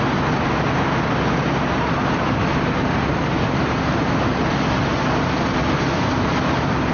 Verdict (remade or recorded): recorded